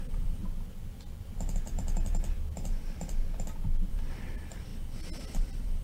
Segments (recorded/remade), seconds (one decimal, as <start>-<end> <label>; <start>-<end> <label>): 0.0-0.4 remade; 0.4-3.9 recorded; 3.9-5.8 remade